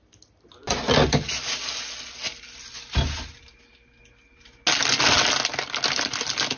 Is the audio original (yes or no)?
yes